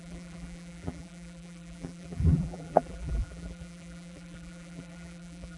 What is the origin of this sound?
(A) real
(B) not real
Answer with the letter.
B